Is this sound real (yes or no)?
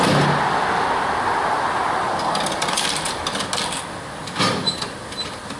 yes